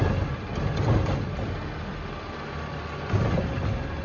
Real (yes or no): yes